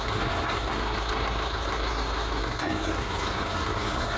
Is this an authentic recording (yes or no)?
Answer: no